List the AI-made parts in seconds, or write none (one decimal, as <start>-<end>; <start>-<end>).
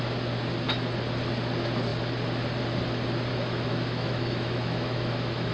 3.3-5.5